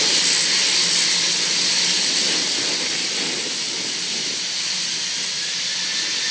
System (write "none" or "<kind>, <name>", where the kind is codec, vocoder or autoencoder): none